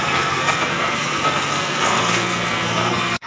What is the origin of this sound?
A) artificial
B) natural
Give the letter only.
A